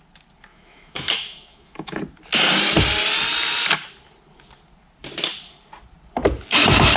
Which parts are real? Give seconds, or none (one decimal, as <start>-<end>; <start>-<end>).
0.0-0.5; 2.0-7.0